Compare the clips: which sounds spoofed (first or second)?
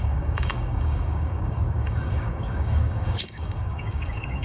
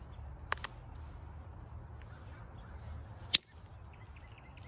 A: first